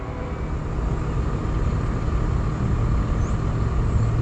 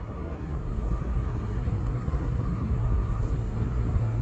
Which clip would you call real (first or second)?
first